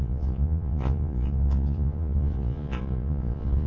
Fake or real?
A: fake